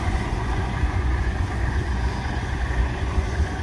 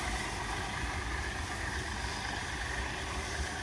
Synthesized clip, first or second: first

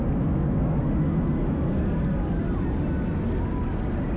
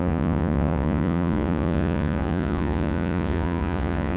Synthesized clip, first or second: second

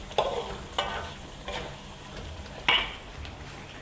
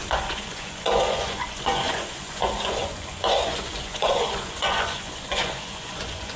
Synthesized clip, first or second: second